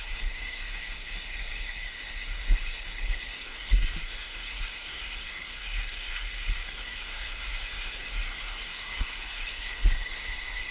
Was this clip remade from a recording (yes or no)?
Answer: yes